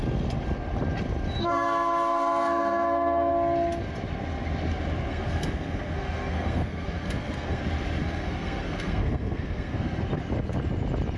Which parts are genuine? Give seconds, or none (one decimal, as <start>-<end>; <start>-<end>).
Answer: 0.0-1.4; 3.3-5.1; 7.6-8.0; 10.0-11.2